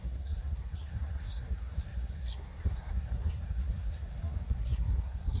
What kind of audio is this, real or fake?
fake